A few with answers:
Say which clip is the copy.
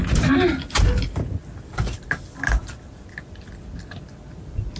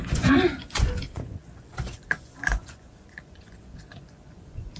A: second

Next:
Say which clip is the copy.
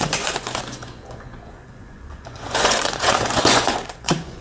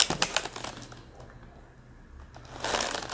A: first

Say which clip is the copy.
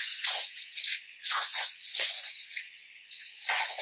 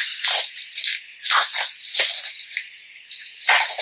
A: first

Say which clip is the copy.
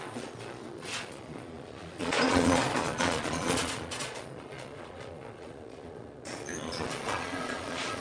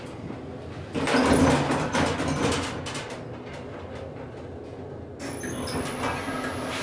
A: first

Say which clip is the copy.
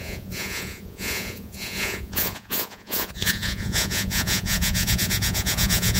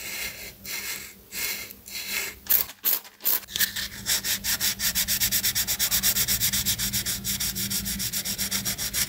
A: first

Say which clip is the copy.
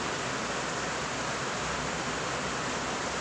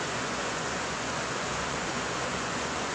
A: second